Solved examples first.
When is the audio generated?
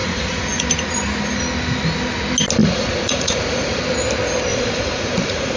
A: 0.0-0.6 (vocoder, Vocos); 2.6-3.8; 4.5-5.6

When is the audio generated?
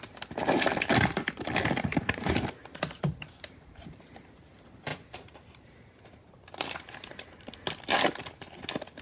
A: 1.9-4.1 (vocoder, BigVGAN v2); 4.9-7.5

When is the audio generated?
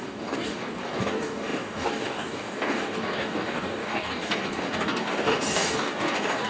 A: 0.0-6.5 (codec, DAC)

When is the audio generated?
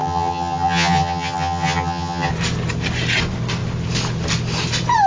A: 0.0-2.3 (vocoder, HiFi-GAN)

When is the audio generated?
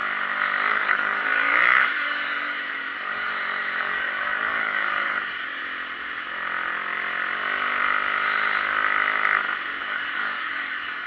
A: 0.7-3.3 (codec, DAC); 3.8-5.6; 9.8-11.1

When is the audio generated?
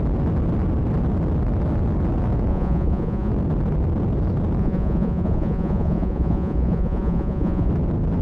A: 2.5-3.3 (vocoder, Vocos); 4.6-7.7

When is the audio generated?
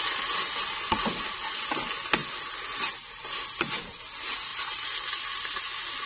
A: none